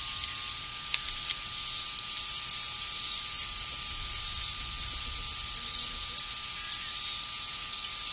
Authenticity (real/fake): real